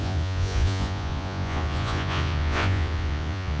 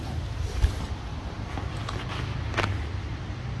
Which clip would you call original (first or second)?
second